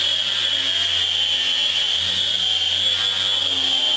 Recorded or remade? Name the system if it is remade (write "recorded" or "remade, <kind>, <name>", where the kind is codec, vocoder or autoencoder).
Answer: recorded